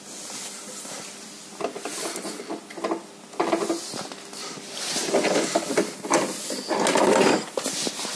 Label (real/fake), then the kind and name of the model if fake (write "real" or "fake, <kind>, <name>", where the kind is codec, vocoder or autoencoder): real